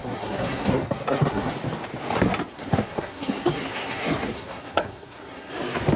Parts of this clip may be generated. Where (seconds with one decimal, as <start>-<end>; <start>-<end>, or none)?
0.0-1.5; 2.5-5.5